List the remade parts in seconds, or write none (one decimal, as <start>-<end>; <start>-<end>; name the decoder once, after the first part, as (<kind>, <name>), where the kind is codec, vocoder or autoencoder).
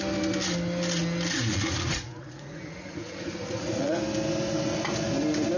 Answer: 1.5-3.9 (vocoder, Vocos)